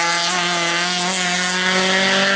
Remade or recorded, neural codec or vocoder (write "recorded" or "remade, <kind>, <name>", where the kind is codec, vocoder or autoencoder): recorded